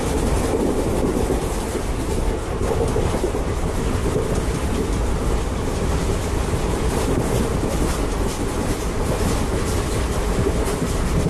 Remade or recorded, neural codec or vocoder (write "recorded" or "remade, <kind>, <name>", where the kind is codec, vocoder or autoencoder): recorded